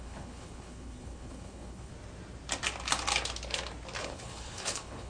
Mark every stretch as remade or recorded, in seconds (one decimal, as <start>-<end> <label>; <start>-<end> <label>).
0.0-1.9 remade; 1.9-4.0 recorded; 4.0-5.1 remade